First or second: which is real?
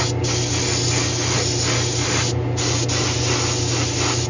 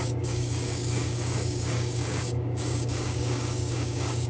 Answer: first